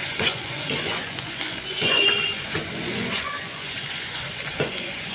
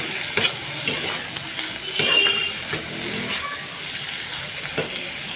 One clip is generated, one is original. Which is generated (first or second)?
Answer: first